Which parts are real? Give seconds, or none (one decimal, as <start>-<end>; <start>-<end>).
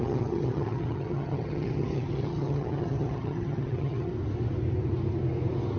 4.1-5.8